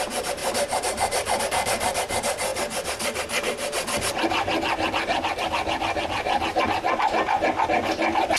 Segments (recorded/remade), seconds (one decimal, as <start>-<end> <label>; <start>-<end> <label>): 0.0-0.4 recorded; 0.4-1.4 remade; 1.4-8.4 recorded